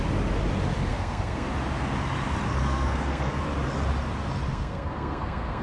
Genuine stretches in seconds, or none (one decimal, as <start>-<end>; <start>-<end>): 0.0-0.9; 1.5-2.6; 3.4-4.5